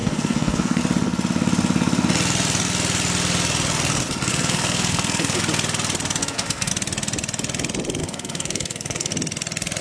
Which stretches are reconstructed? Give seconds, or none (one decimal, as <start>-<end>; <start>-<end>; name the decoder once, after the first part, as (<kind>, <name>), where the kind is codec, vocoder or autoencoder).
0.0-0.8 (codec, SNAC); 4.3-5.4; 6.2-6.7; 8.0-9.1